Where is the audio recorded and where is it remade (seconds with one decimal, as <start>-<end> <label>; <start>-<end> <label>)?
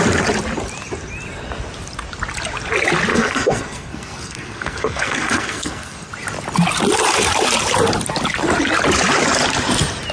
0.0-3.1 recorded; 3.1-6.1 remade; 6.1-10.1 recorded